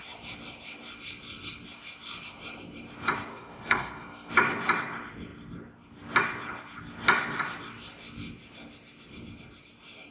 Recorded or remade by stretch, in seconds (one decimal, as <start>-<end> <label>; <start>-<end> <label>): 0.0-3.3 recorded; 3.3-4.3 remade; 4.3-10.1 recorded